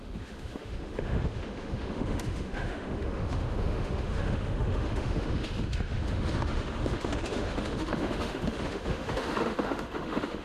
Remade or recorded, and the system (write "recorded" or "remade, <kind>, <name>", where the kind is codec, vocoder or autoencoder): remade, autoencoder, DAC-VAE